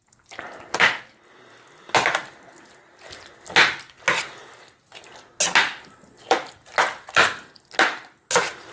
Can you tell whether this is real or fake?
real